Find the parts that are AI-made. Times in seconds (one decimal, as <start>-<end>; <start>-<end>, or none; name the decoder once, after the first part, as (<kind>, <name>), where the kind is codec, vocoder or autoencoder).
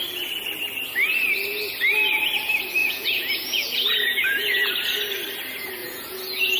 2.8-4.7 (vocoder, Vocos); 5.8-6.6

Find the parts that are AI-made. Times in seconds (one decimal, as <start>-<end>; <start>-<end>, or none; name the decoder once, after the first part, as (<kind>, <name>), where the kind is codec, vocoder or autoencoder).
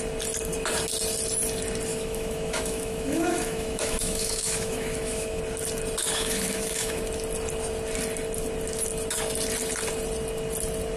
1.9-5.4 (autoencoder, DAC-VAE); 6.0-7.0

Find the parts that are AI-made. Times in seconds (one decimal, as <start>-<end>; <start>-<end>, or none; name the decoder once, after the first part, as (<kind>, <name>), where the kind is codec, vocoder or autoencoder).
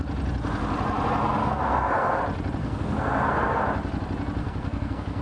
1.4-2.2 (codec, SNAC); 2.6-3.6; 4.4-5.2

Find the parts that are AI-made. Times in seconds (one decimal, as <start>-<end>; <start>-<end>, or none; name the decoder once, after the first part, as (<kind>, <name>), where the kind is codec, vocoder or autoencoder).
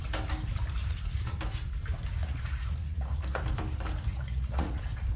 0.8-1.4 (vocoder, Vocos); 2.2-3.4; 4.1-4.8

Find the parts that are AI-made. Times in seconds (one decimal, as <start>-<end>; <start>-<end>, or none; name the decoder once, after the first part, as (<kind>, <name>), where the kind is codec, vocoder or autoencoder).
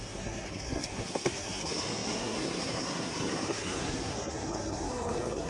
0.0-5.5 (codec, SNAC)